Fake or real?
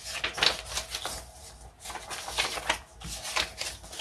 real